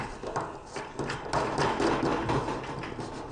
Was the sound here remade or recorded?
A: recorded